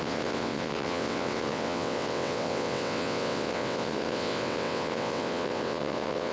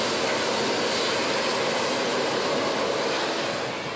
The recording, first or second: second